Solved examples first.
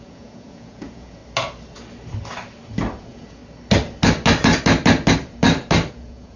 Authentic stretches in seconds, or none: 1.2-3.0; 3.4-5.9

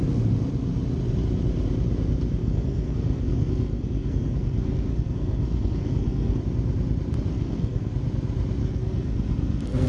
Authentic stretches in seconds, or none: 0.0-2.4; 6.4-7.3; 7.9-8.6